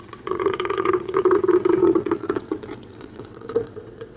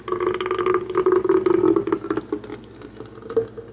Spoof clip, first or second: first